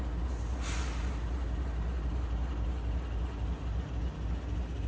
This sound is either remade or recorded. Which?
recorded